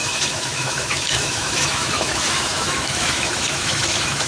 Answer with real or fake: fake